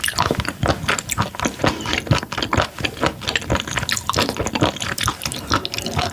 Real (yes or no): yes